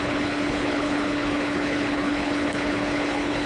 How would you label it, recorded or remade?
remade